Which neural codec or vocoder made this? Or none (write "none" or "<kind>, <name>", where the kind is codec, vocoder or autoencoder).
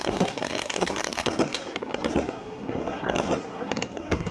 codec, SNAC